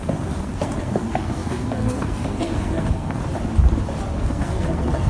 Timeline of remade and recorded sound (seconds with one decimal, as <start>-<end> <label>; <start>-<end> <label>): 0.0-3.2 remade; 3.2-4.2 recorded; 4.2-5.1 remade